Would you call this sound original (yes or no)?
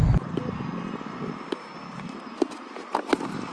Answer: yes